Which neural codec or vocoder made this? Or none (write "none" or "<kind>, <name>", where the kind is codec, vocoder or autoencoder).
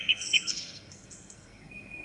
codec, SNAC